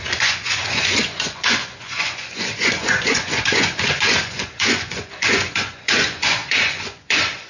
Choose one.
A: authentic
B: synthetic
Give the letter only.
B